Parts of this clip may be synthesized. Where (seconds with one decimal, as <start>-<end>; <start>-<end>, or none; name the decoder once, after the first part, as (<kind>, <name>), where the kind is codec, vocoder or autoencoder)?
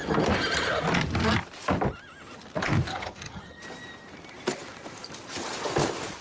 2.9-3.6 (vocoder, HiFi-GAN)